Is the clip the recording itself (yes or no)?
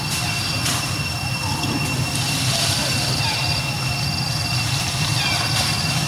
yes